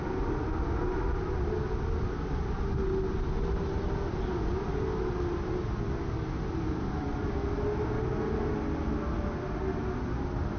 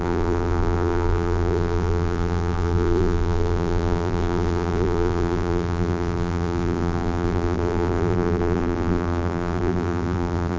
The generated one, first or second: second